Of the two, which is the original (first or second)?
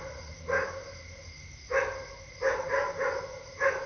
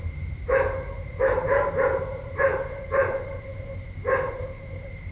first